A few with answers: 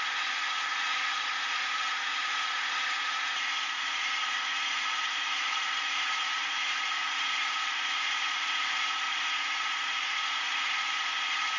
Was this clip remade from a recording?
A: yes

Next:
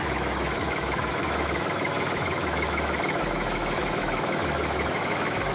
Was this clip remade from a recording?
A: yes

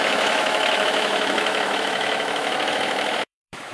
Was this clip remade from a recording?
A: yes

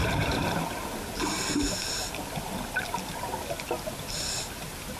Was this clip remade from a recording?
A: no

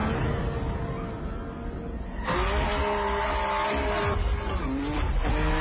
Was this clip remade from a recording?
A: no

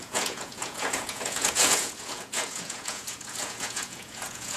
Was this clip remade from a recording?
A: yes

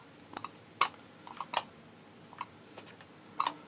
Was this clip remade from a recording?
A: no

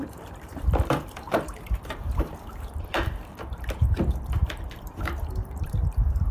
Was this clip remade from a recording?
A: yes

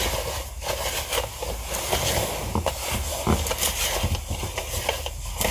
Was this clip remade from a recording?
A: no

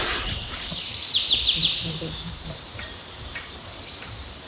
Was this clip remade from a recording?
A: yes